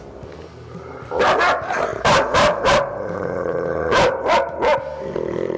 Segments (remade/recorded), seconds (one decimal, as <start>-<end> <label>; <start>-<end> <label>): 0.0-1.9 recorded; 1.9-4.8 remade; 4.8-5.6 recorded